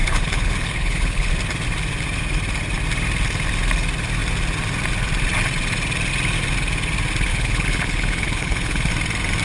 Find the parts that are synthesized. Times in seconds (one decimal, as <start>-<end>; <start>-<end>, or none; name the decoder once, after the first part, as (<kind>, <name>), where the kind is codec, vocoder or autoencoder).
0.0-1.3 (codec, HILCodec); 7.3-8.9

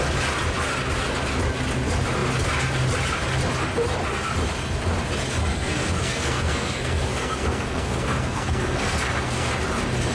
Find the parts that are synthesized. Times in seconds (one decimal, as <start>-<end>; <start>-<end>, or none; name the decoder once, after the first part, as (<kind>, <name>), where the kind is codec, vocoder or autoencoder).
5.4-9.5 (codec, SNAC)

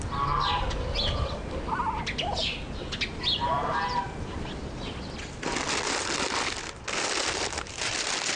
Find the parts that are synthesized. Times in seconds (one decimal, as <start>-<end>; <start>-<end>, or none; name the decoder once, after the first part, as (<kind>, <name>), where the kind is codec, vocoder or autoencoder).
7.2-7.9 (vocoder, BigVGAN v2)

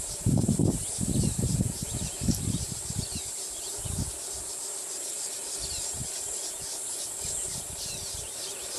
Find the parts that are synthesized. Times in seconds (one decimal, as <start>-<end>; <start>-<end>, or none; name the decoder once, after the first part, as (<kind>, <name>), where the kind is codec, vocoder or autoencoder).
0.0-6.0 (vocoder, BigVGAN v2); 7.3-8.8

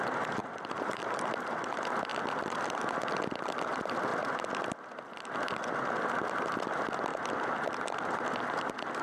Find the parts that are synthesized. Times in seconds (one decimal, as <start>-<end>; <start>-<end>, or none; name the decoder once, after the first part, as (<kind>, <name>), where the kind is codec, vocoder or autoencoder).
0.4-1.0 (vocoder, BigVGAN v2)

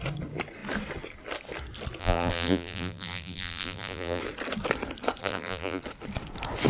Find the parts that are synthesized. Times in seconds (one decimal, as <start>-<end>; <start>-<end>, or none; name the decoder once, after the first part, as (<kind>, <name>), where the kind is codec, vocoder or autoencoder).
2.0-4.2 (vocoder, BigVGAN v2); 5.2-5.8

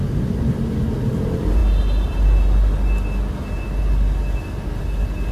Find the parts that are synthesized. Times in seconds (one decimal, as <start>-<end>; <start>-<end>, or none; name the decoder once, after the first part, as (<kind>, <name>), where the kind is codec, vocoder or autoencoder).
none

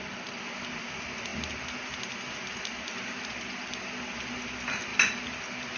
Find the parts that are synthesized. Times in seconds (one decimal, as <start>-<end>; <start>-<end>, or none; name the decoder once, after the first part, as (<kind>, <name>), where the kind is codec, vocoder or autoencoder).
none